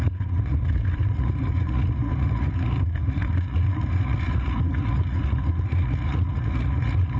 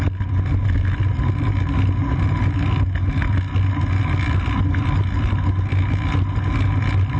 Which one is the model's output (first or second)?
first